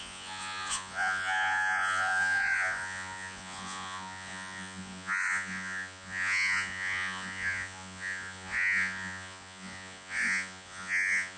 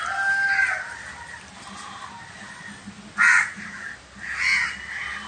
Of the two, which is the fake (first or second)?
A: first